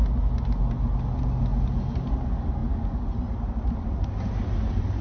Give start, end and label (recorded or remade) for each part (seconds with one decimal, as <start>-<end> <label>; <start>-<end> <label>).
0.0-5.0 recorded